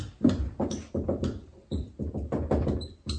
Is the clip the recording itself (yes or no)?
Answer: yes